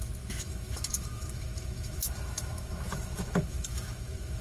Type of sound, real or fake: fake